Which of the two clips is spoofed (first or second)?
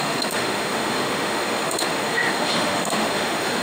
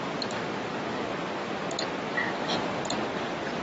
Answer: first